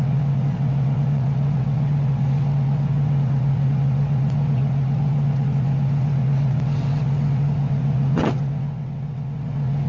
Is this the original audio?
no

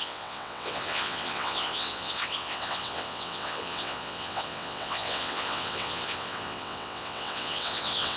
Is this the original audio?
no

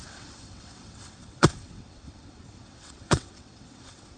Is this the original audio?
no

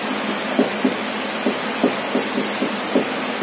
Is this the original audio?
yes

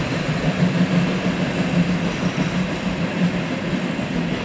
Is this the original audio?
yes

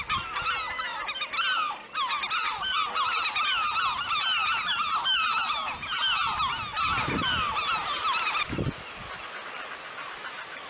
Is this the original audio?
yes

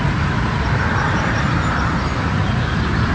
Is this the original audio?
yes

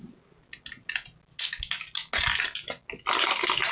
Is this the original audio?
yes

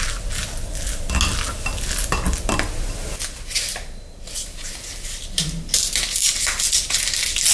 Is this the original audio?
yes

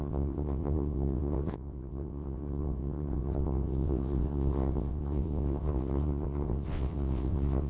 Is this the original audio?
no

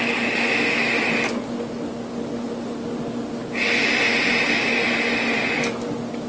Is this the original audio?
yes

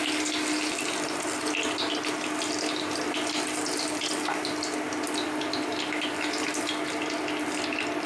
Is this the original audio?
yes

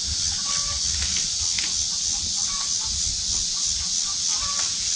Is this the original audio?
yes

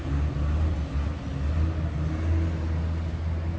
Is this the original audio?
yes